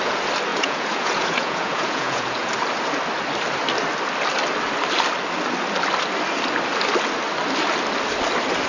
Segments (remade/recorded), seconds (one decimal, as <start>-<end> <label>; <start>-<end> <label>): 0.0-0.5 recorded; 0.5-2.5 remade; 2.5-8.7 recorded